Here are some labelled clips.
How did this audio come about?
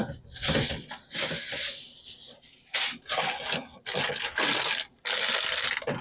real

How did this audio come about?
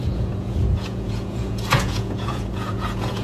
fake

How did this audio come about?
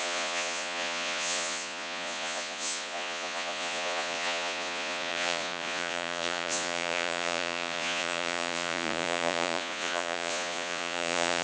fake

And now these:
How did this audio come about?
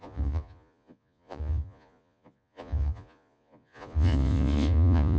fake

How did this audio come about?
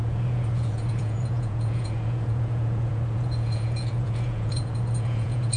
fake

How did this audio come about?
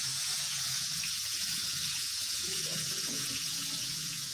fake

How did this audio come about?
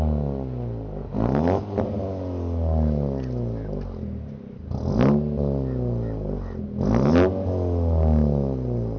real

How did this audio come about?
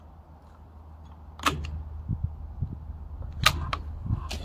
real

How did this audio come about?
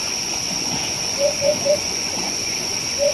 fake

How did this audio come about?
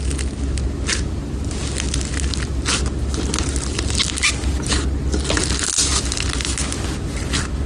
real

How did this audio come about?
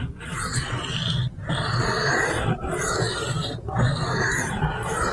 real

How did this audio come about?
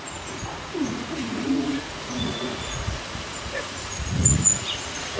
fake